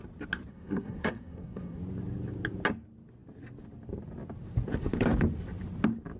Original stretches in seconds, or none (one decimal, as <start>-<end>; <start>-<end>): 0.0-0.5; 1.8-6.2